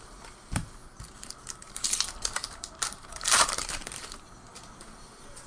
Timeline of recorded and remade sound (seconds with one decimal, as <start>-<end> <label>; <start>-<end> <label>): 0.0-0.8 recorded; 0.8-4.1 remade; 4.1-5.5 recorded